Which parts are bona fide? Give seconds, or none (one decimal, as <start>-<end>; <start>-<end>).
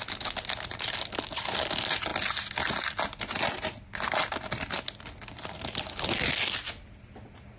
0.0-7.6